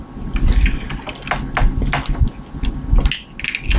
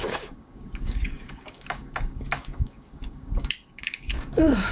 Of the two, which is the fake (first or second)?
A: second